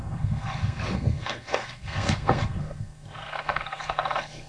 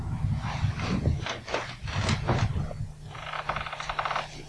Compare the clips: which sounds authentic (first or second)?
second